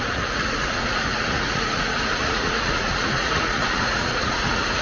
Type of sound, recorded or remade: remade